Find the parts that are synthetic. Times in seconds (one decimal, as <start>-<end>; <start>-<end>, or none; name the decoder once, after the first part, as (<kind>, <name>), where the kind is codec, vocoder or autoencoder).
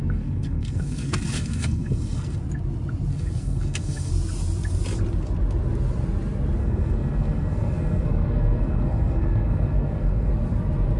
0.0-2.4 (codec, SNAC); 3.1-4.1; 6.6-10.3